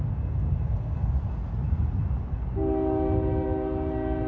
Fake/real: real